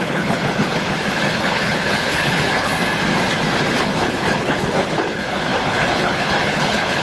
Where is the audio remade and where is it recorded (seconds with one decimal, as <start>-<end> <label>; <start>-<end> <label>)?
0.0-2.7 remade; 2.7-3.8 recorded; 3.8-7.0 remade